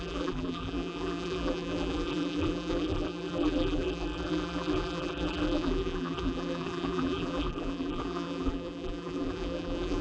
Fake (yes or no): yes